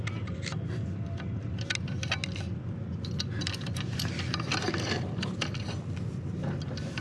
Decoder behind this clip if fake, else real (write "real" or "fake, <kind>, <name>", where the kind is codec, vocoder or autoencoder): real